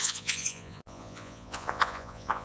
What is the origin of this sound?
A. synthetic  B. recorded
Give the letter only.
A